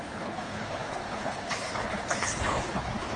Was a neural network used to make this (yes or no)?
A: yes